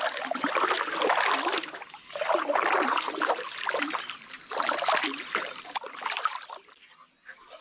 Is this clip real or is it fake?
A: real